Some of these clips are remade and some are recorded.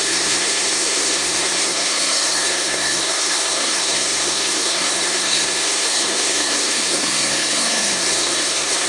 remade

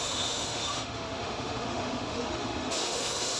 remade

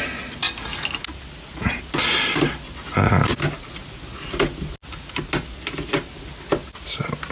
recorded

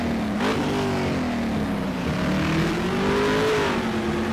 recorded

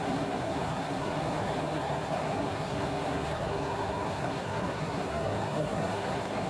remade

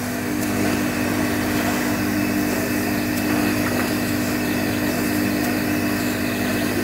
recorded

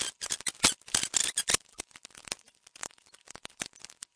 recorded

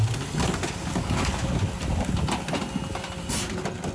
recorded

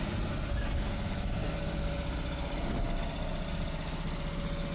recorded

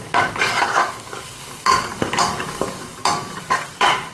remade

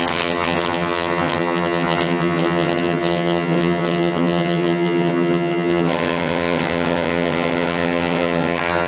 remade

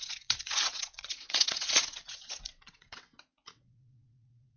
remade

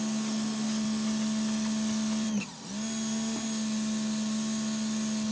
recorded